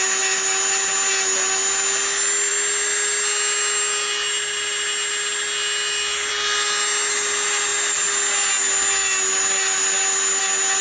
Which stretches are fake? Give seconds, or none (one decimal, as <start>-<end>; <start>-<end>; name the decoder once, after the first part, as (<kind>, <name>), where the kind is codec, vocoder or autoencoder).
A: none